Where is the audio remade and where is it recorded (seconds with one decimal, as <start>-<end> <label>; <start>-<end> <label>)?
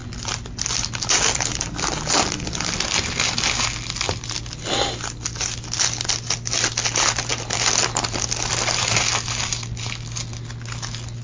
0.0-11.2 recorded